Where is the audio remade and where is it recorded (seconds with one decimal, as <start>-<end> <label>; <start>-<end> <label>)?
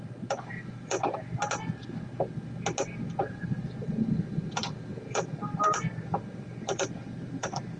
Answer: 0.0-1.4 remade; 1.4-3.2 recorded; 3.2-7.8 remade